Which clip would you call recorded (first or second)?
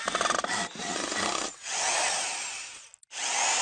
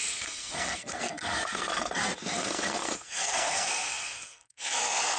first